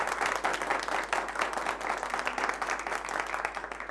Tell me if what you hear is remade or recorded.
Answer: recorded